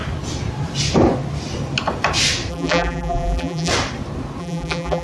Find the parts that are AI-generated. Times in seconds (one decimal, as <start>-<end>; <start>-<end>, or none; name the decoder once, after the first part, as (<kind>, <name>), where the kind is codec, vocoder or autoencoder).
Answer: 2.5-3.7 (vocoder, BigVGAN v2); 4.4-5.0